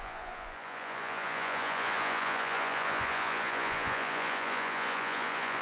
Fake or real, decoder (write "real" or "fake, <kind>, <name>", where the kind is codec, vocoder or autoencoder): fake, vocoder, Vocos